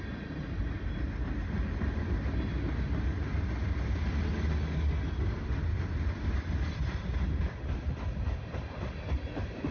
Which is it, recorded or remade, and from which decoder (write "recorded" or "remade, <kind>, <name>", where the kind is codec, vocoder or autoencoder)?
recorded